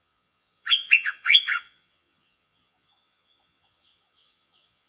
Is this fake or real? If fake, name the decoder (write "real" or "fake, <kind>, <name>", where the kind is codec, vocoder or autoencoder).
fake, vocoder, Vocos